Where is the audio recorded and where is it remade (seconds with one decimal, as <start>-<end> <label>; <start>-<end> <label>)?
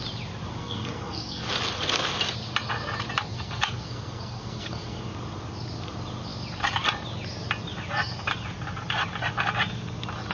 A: 0.0-0.5 recorded; 0.5-1.5 remade; 1.5-3.3 recorded; 3.3-5.0 remade; 5.0-10.3 recorded